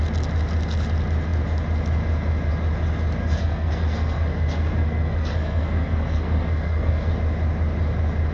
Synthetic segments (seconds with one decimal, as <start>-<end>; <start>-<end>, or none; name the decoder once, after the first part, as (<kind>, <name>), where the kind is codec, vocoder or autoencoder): 3.2-7.1 (codec, SNAC)